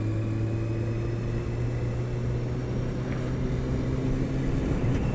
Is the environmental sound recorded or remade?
recorded